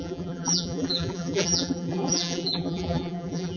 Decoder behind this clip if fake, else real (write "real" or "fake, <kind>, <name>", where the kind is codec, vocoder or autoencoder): fake, vocoder, BigVGAN v2